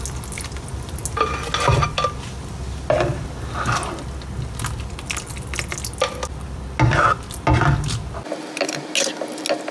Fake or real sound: real